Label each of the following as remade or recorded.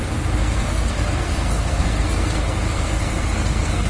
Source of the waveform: remade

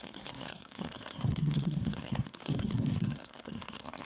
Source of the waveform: remade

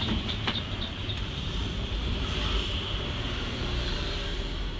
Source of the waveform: remade